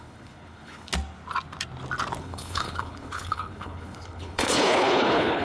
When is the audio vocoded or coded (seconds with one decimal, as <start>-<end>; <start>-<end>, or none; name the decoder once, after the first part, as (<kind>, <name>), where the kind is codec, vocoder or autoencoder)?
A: 0.0-0.9 (codec, HILCodec); 2.2-5.4